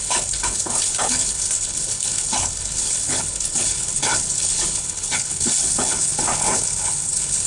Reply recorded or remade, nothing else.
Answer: remade